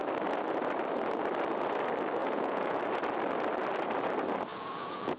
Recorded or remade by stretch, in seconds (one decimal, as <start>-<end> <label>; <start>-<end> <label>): 0.0-2.2 recorded; 2.2-2.8 remade; 2.8-4.5 recorded; 4.5-5.2 remade